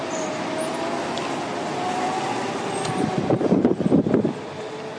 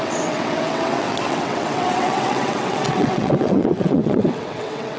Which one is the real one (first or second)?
first